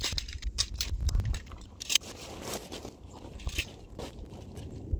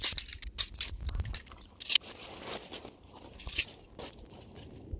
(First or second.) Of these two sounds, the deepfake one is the first